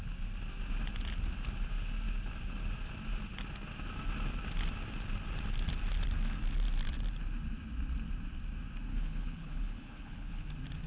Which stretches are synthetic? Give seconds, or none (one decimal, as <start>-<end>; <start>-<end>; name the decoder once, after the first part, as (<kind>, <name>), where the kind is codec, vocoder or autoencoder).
8.9-10.5 (codec, HILCodec)